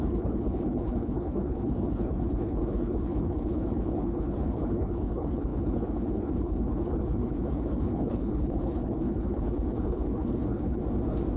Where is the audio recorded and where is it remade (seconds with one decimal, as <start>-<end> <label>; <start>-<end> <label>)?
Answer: 0.0-10.8 remade; 10.8-11.4 recorded